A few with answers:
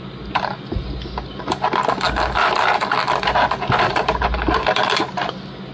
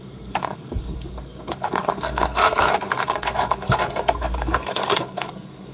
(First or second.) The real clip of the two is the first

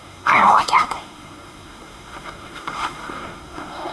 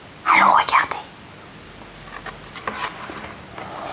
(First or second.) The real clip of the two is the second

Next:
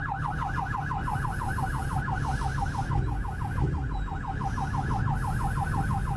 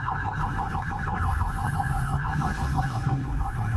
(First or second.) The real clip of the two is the first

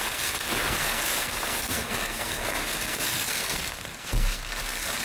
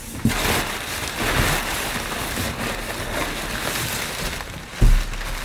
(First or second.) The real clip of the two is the second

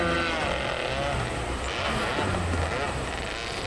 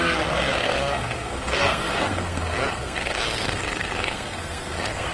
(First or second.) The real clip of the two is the first